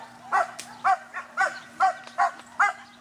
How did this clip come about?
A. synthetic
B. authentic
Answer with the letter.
B